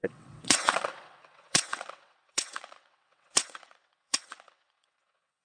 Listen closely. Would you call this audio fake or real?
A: fake